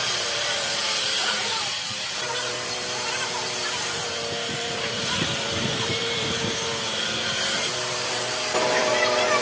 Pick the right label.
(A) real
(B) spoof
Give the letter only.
B